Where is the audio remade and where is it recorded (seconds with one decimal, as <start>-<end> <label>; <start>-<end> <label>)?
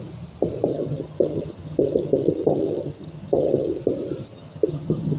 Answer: 0.0-0.7 recorded; 0.7-3.8 remade; 3.8-4.3 recorded; 4.3-5.2 remade